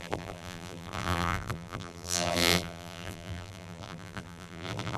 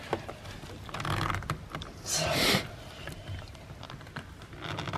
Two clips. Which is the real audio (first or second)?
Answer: second